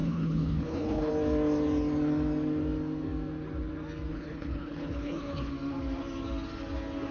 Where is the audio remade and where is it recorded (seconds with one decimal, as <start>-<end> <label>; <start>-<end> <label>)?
0.0-1.1 remade; 1.1-4.1 recorded; 4.1-5.5 remade; 5.5-7.1 recorded